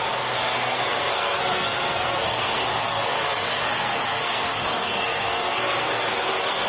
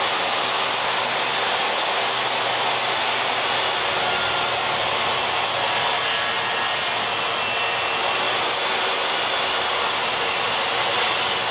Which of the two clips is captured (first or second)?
second